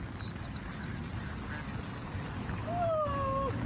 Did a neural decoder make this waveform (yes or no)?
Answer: no